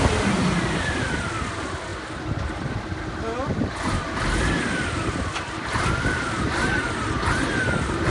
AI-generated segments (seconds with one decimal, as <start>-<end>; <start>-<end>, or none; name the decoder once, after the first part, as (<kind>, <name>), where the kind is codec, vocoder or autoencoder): none